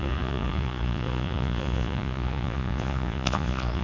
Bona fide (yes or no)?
no